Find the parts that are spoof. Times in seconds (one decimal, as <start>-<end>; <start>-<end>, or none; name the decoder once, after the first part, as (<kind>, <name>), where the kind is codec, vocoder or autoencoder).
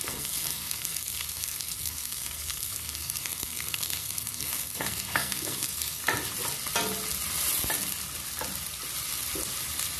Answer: 0.0-6.0 (codec, SNAC)